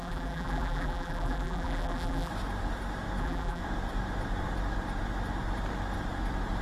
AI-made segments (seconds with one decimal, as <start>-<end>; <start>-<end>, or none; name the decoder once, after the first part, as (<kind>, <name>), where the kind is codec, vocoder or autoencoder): 0.0-2.3 (vocoder, BigVGAN v2); 3.2-3.6